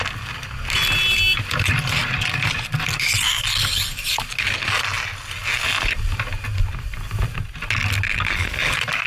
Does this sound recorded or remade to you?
recorded